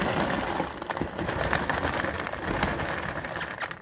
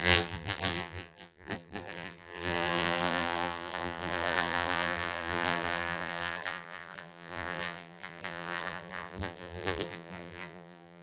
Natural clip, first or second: first